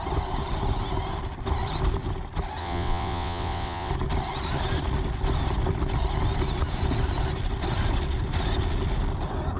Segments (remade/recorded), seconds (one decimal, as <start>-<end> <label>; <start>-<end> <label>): 0.0-2.6 recorded; 2.6-3.9 remade; 3.9-9.6 recorded